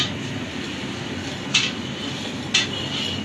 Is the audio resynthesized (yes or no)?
no